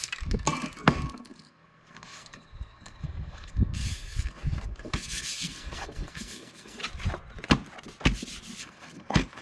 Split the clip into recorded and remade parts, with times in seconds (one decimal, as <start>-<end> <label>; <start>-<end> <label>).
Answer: 0.0-6.8 remade; 6.8-8.6 recorded; 8.6-9.4 remade